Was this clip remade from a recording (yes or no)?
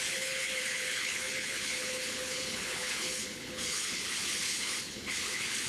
yes